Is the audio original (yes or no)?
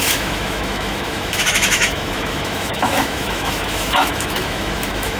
no